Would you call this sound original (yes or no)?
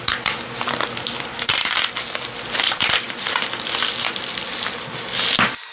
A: yes